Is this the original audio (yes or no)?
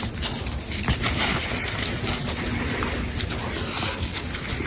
yes